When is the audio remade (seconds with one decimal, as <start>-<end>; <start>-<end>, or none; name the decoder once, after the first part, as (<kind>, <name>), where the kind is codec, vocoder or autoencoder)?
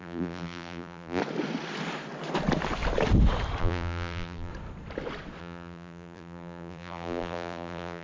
0.0-1.2 (vocoder, BigVGAN v2); 3.6-4.5; 5.4-8.0